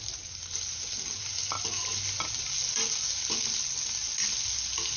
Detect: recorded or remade recorded